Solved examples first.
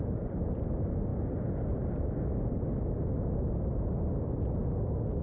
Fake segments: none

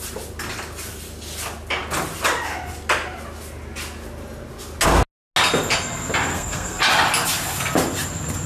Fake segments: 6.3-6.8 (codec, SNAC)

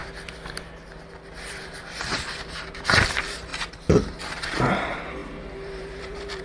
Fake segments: 1.1-6.4 (vocoder, BigVGAN v2)